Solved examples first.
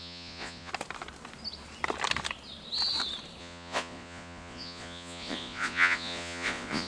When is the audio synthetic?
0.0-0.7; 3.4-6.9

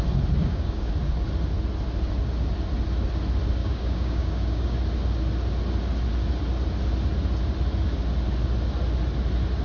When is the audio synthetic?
0.4-0.9; 3.6-4.8

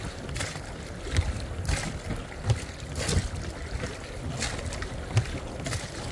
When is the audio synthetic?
none

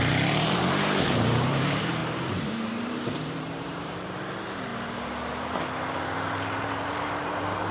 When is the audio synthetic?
0.0-4.7; 6.0-7.7

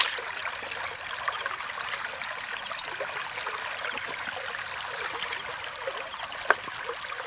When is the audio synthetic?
none

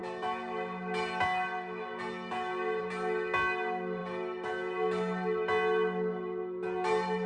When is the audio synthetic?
none